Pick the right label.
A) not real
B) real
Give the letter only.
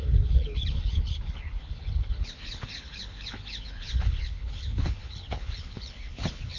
A